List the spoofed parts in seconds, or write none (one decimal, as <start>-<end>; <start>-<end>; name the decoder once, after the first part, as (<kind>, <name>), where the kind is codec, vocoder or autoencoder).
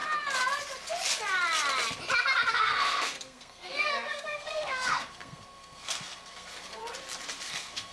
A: 2.5-6.8 (codec, SNAC); 7.5-7.9